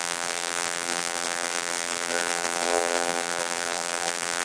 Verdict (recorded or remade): remade